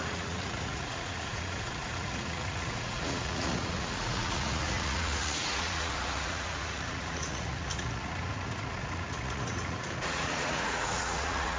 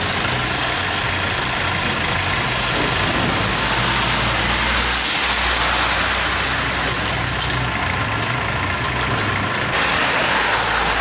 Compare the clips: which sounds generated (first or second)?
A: first